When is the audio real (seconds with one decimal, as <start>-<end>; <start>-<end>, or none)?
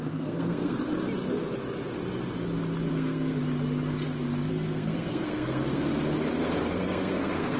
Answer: 0.8-2.9; 3.4-4.5; 5.9-6.7